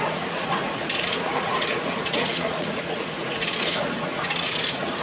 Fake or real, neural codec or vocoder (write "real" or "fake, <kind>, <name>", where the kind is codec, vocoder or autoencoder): fake, vocoder, Vocos